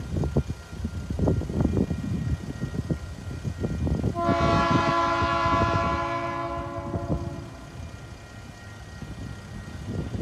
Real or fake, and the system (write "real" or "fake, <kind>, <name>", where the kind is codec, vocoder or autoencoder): real